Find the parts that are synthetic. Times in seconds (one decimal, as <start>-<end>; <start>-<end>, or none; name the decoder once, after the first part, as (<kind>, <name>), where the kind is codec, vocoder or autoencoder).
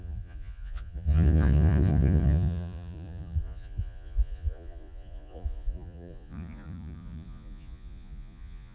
0.0-8.7 (vocoder, Vocos)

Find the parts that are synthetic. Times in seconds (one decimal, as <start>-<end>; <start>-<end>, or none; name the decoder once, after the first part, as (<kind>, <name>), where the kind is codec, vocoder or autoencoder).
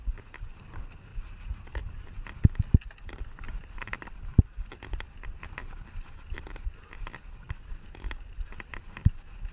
1.1-1.9 (vocoder, Vocos)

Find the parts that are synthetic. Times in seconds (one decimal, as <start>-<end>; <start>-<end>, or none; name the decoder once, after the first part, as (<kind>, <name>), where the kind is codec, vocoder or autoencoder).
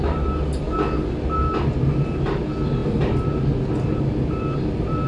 none